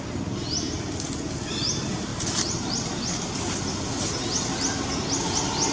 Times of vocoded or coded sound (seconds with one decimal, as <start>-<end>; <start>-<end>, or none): none